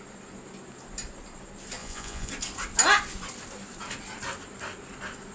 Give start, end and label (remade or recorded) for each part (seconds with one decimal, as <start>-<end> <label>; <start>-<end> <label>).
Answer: 0.0-1.8 recorded; 1.8-2.3 remade; 2.3-5.3 recorded